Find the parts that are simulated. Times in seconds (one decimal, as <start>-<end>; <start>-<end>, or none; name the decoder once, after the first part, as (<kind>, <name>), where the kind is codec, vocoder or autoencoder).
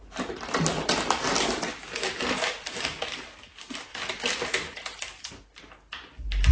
none